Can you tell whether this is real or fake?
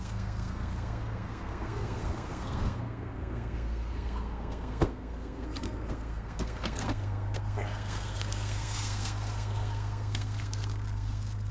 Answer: fake